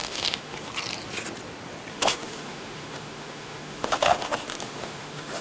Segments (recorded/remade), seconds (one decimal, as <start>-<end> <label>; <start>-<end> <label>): 0.0-0.7 remade; 0.7-1.9 recorded; 1.9-5.4 remade

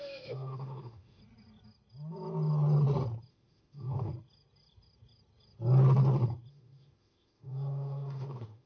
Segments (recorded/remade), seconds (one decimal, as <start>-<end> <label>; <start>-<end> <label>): 0.0-1.2 remade; 1.2-3.3 recorded; 3.3-4.1 remade; 4.1-6.5 recorded; 6.5-8.7 remade